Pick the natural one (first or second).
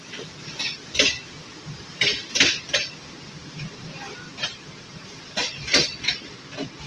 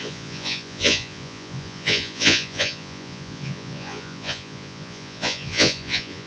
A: first